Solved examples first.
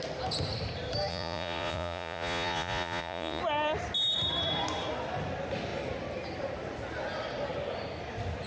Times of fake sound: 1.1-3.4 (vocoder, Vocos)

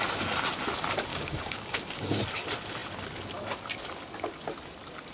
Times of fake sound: 1.1-2.2 (codec, DAC)

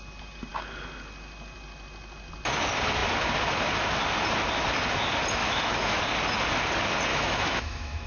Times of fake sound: 5.4-6.0 (autoencoder, DAC-VAE); 7.1-8.1